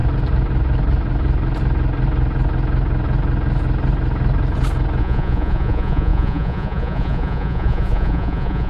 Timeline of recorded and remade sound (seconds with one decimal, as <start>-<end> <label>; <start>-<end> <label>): 0.0-5.0 recorded; 5.0-8.7 remade